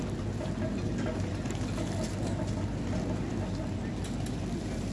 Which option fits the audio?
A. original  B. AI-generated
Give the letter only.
A